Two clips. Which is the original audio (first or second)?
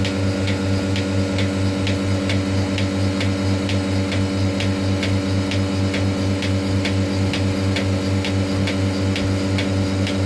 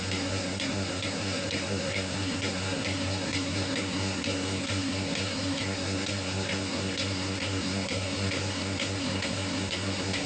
first